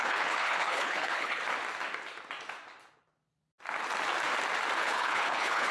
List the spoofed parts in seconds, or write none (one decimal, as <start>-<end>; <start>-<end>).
0.0-1.4; 4.8-5.7